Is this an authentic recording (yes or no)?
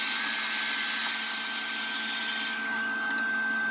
yes